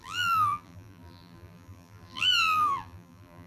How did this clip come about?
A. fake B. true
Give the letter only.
A